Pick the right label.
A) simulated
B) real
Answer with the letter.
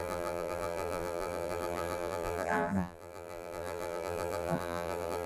A